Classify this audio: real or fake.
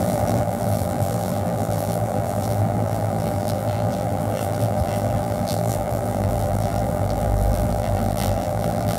fake